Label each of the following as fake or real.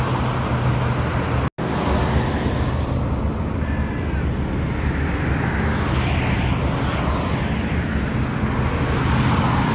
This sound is real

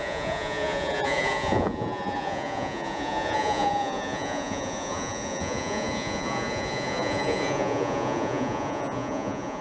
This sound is fake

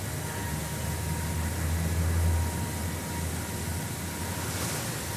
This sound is real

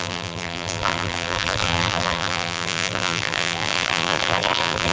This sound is fake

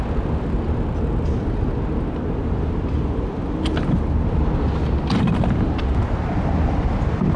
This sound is real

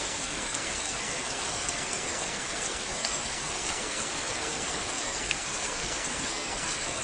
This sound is fake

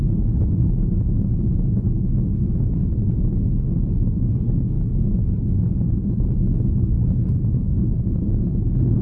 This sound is fake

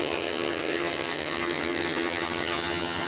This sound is fake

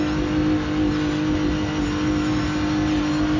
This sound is real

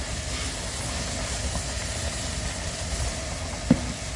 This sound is real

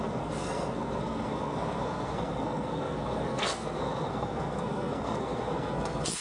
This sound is fake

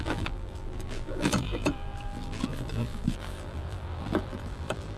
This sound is fake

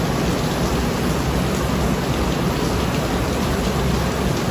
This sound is real